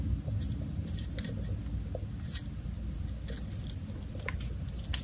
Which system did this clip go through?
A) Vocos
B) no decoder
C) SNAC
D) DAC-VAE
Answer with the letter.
B